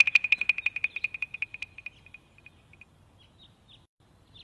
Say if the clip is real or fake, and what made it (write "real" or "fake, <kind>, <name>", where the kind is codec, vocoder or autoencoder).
real